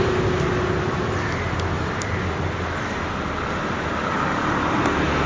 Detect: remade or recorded recorded